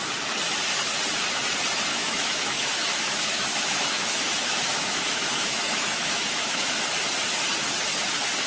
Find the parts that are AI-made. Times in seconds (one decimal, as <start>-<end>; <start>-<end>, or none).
1.9-6.8